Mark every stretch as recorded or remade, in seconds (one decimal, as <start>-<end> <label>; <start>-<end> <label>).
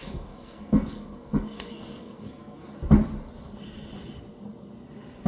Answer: 0.0-2.7 remade; 2.7-5.3 recorded